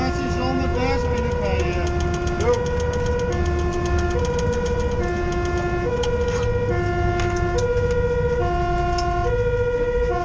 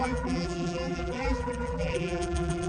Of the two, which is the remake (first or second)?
second